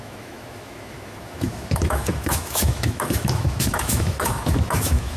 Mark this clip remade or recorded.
remade